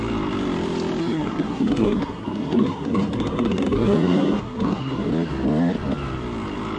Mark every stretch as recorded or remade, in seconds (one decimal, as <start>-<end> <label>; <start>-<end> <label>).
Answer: 0.0-1.0 recorded; 1.0-5.1 remade; 5.1-6.8 recorded